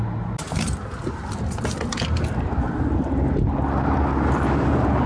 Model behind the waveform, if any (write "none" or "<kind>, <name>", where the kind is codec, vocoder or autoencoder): none